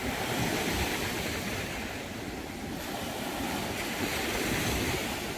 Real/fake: real